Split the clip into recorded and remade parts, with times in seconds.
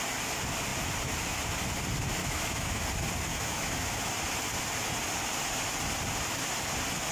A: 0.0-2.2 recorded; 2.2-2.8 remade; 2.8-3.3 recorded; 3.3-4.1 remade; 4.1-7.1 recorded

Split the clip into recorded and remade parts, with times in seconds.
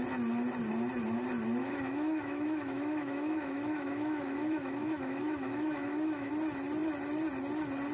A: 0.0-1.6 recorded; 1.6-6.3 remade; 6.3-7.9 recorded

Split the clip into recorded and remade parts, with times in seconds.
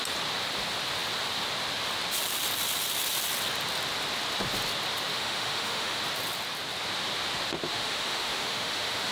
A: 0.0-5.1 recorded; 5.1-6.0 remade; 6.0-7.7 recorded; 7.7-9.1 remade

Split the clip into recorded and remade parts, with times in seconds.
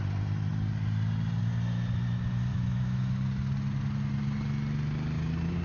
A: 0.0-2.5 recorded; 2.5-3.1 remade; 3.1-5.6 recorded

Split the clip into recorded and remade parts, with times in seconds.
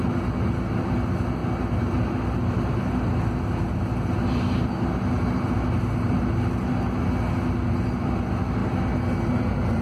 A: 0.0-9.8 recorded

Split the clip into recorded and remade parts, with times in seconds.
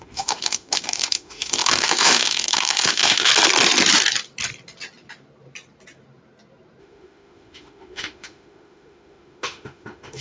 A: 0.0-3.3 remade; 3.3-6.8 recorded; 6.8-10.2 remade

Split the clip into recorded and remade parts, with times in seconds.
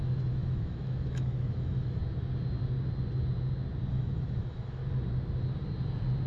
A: 0.0-2.0 remade; 2.0-3.9 recorded; 3.9-4.8 remade; 4.8-6.3 recorded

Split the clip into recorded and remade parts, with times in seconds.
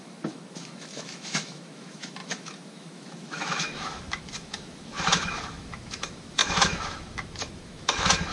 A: 0.0-8.3 remade